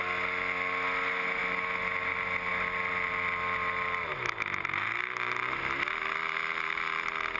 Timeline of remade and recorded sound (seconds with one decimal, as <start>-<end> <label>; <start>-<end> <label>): 0.0-7.4 recorded